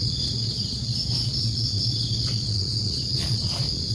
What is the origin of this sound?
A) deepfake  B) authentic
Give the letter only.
A